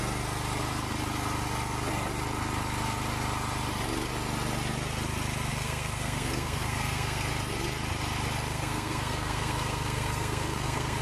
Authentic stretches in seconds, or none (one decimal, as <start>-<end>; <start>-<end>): 0.0-5.5; 7.3-8.5